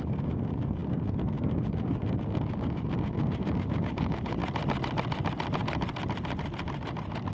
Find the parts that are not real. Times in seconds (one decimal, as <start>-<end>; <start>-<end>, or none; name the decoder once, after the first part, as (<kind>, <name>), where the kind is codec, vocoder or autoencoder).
0.0-4.4 (codec, DAC)